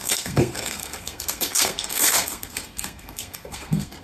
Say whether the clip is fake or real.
fake